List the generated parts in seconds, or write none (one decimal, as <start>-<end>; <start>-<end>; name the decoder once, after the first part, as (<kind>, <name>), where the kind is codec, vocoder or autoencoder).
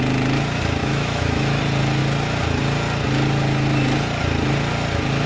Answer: 0.8-1.6 (autoencoder, DAC-VAE)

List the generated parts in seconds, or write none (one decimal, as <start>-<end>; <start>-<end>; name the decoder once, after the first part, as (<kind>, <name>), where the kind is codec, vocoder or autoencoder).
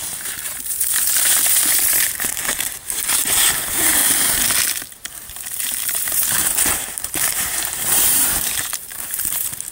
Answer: 0.0-4.0 (vocoder, BigVGAN v2); 4.8-9.7